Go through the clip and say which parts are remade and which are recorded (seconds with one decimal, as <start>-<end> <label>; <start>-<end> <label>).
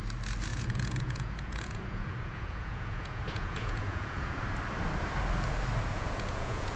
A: 0.0-0.5 recorded; 0.5-4.4 remade; 4.4-5.9 recorded; 5.9-6.8 remade